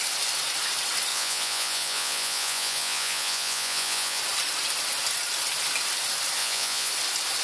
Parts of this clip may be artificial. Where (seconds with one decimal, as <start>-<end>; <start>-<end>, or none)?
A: 1.1-4.2; 6.4-6.9